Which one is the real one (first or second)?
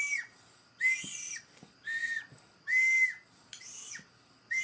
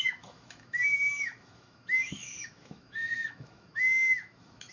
first